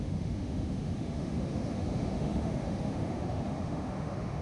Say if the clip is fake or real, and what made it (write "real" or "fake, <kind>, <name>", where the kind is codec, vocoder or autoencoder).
fake, autoencoder, DAC-VAE